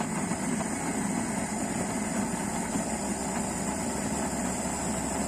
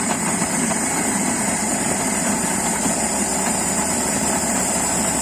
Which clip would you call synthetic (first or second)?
second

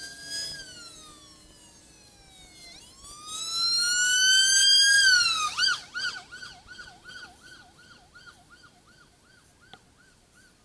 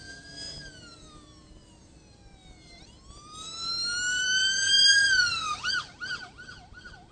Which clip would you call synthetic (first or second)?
second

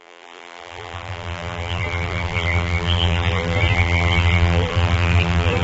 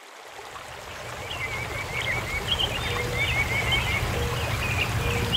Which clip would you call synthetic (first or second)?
first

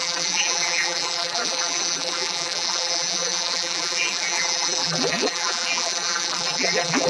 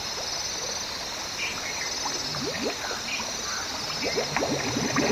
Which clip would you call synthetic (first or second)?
first